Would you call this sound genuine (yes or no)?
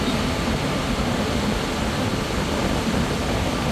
yes